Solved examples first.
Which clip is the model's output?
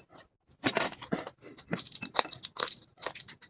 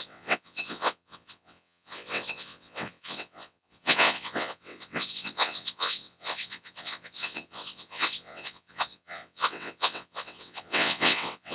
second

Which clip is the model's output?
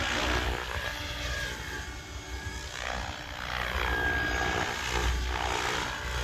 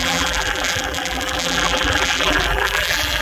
second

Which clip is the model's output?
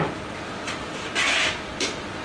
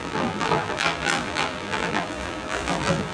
second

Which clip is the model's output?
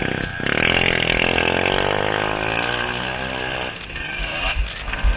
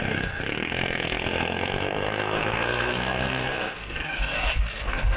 second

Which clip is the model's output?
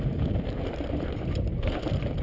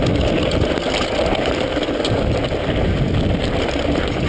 first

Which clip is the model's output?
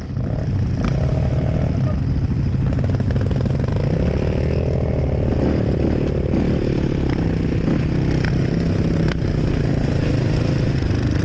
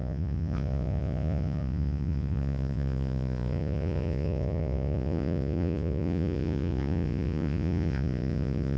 second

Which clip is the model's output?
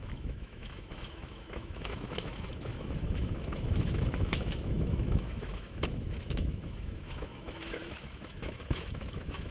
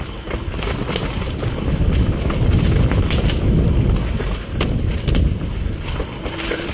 first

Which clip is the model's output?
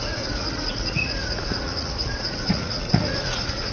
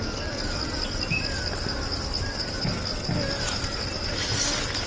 first